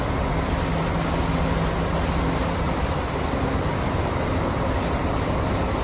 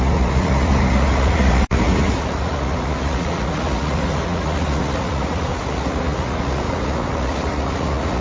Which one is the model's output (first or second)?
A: second